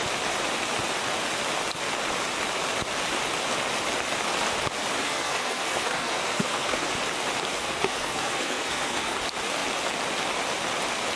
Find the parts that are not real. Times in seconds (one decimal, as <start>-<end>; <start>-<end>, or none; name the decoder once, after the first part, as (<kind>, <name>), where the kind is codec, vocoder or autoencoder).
5.0-6.9 (codec, SNAC); 7.5-9.2